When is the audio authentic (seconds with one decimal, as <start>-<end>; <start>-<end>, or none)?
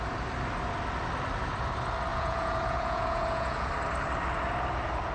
0.0-2.1; 3.7-5.1